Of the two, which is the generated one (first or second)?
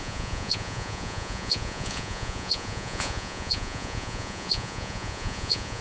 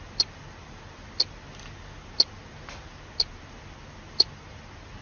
first